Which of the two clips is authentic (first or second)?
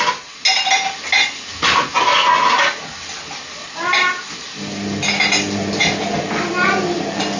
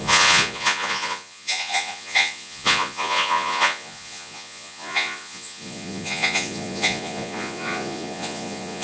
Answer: first